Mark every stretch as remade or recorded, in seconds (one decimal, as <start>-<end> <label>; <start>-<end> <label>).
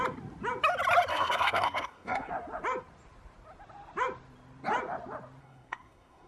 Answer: 0.0-1.1 recorded; 1.1-2.3 remade; 2.3-5.4 recorded; 5.4-6.3 remade